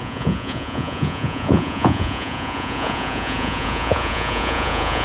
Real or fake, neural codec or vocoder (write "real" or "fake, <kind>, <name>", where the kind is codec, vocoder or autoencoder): fake, vocoder, Vocos